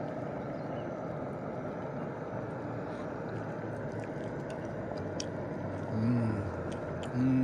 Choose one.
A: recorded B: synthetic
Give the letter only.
A